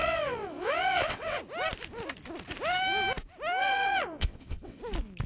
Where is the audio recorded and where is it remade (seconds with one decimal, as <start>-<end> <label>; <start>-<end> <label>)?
0.0-1.4 remade; 1.4-3.6 recorded; 3.6-4.8 remade; 4.8-5.3 recorded